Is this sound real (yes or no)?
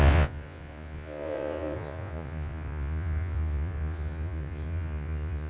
no